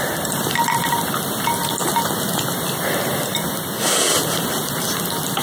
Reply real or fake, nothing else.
fake